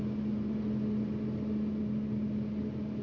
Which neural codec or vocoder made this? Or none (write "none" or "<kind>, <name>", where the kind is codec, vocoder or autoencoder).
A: none